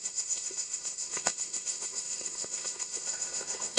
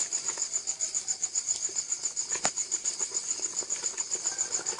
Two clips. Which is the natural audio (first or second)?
second